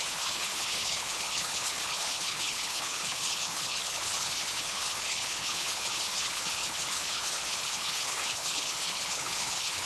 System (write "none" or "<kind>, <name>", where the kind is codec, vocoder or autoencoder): codec, HILCodec